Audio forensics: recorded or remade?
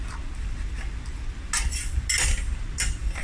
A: recorded